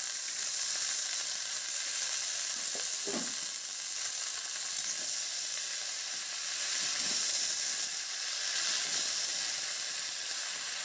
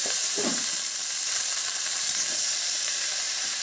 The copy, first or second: second